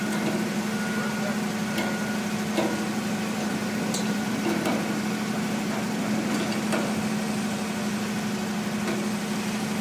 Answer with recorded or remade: recorded